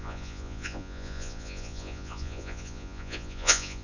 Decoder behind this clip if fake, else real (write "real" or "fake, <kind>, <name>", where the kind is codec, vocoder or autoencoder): fake, vocoder, Vocos